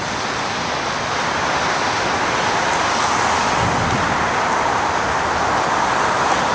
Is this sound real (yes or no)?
yes